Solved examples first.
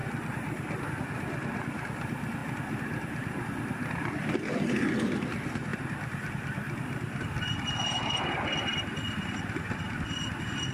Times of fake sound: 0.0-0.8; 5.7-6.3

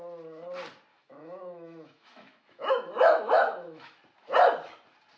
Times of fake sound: 0.9-4.0

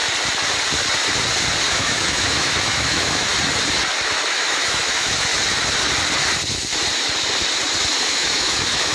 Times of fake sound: 1.7-3.3; 4.1-5.3; 8.0-8.9

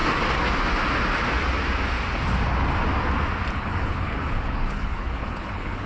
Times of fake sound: 3.5-5.9